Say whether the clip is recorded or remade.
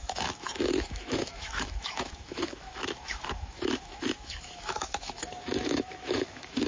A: remade